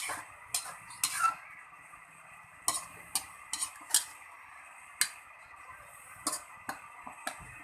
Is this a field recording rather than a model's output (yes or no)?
yes